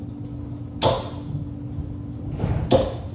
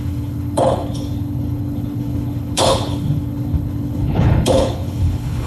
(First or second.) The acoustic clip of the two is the first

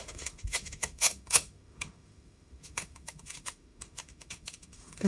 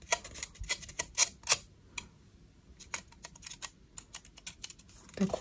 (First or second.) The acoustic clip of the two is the second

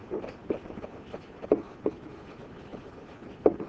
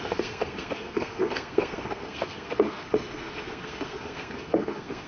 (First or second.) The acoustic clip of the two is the first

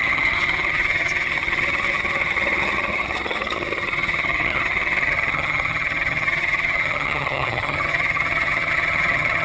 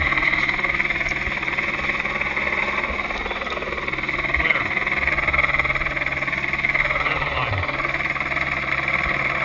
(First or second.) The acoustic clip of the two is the second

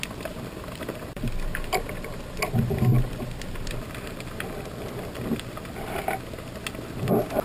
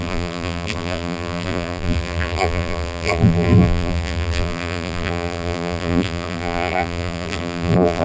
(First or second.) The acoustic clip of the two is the first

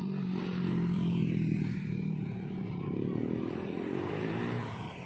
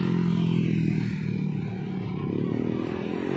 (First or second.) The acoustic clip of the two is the second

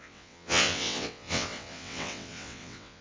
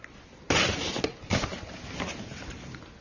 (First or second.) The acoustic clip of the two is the second